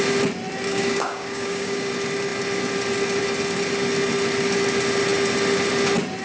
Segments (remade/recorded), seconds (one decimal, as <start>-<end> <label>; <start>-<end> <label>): 0.0-0.7 recorded; 0.7-1.9 remade; 1.9-6.2 recorded

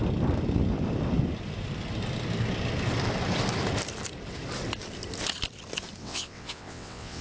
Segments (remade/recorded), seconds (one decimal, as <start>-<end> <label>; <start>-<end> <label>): 0.0-6.0 recorded; 6.0-7.2 remade